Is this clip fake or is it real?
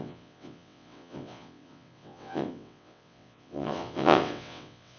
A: fake